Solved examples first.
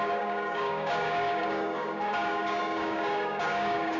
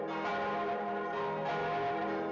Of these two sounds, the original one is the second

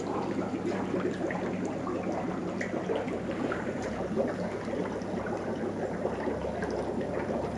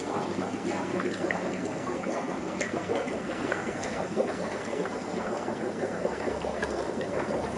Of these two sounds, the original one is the first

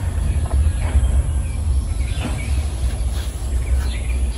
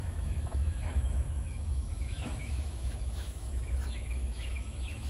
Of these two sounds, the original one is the first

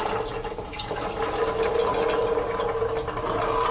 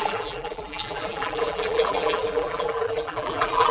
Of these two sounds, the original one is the first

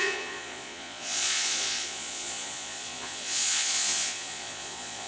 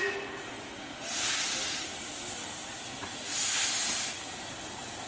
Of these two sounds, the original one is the second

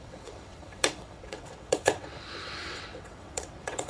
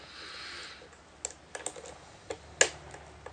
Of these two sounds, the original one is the second